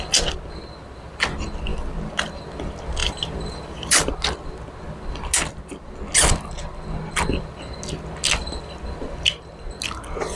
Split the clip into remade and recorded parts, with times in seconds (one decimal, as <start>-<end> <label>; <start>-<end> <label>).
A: 0.0-3.0 recorded; 3.0-4.1 remade; 4.1-10.4 recorded